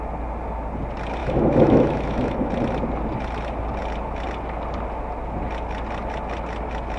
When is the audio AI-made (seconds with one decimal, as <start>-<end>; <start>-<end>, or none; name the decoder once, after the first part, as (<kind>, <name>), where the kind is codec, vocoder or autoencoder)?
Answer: 1.2-2.5 (autoencoder, DAC-VAE)